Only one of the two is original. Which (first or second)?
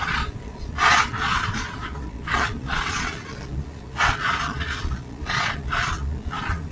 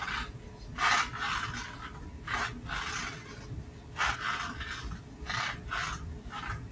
second